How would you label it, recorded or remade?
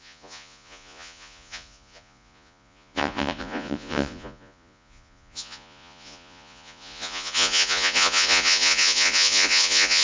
remade